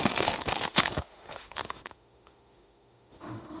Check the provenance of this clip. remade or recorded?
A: remade